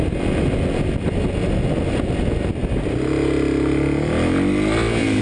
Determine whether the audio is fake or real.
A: real